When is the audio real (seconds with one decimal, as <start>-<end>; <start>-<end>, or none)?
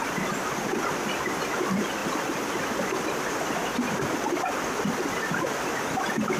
0.0-2.0; 5.8-6.4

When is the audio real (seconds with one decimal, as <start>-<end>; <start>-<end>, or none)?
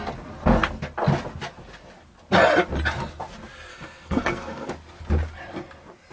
0.0-3.7; 4.7-6.1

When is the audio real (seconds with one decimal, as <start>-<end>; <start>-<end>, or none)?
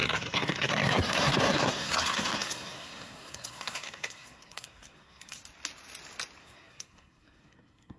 5.4-6.4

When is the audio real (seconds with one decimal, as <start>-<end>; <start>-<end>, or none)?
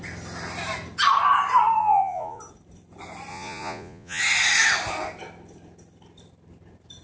0.0-1.8; 2.4-3.3; 4.2-7.0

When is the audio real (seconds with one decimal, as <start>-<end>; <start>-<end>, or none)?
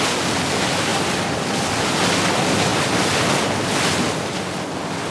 0.0-0.9; 1.8-5.1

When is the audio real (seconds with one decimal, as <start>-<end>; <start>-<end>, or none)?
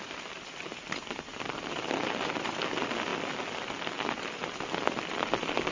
0.0-5.7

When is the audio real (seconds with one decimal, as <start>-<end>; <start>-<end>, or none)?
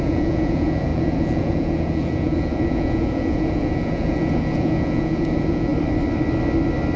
5.7-7.0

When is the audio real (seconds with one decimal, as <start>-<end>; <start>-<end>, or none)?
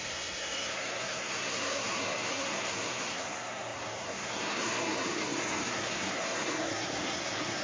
none